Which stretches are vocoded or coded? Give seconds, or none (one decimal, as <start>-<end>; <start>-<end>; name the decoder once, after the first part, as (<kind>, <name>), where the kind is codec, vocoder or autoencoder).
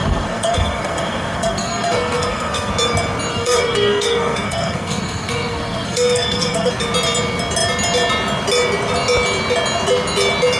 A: 0.0-2.7 (codec, SNAC); 3.3-6.7